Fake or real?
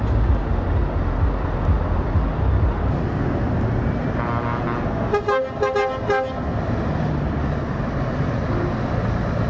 real